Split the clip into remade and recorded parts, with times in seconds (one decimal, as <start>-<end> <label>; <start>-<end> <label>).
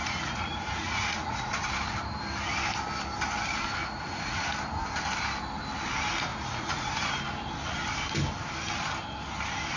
0.0-1.5 remade; 1.5-3.8 recorded; 3.8-4.4 remade; 4.4-6.3 recorded; 6.3-6.9 remade; 6.9-9.8 recorded